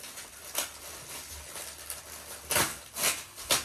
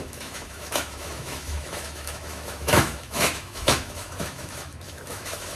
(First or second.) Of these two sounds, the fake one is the second